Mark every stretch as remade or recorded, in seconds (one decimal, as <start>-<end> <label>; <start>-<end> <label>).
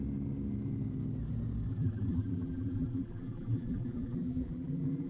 0.0-1.7 recorded; 1.7-5.1 remade